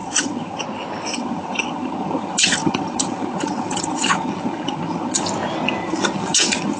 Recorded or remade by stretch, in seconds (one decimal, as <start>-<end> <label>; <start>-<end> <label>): 0.0-0.6 remade; 0.6-1.1 recorded; 1.1-5.2 remade; 5.2-5.8 recorded; 5.8-6.8 remade